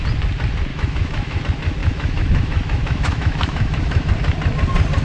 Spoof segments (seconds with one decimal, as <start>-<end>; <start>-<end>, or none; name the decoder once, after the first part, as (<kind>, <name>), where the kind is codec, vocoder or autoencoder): 0.7-1.4 (autoencoder, DAC-VAE); 1.8-4.1